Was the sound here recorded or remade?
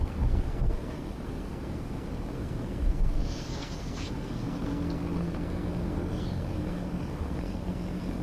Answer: remade